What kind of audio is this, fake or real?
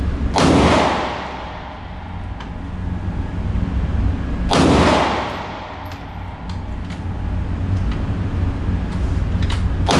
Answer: real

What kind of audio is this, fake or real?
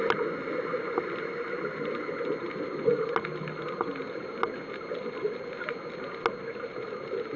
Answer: real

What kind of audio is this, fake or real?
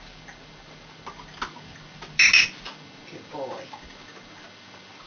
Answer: real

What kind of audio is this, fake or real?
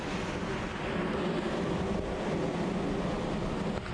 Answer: real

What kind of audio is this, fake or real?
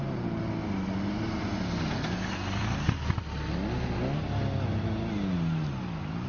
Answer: real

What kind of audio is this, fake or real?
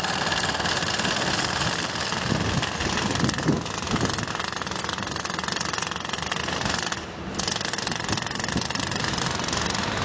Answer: real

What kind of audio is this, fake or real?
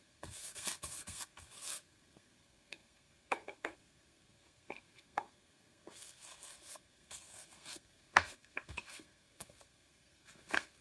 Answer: fake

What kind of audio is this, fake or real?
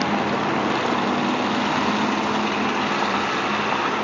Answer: real